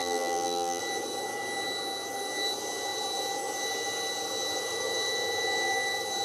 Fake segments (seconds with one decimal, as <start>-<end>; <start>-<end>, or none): 0.0-0.8